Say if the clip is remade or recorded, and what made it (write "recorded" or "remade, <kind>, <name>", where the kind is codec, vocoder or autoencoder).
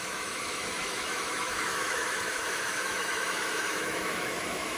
remade, autoencoder, DAC-VAE